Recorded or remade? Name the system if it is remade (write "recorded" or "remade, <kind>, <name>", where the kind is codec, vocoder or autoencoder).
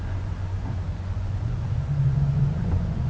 remade, vocoder, Vocos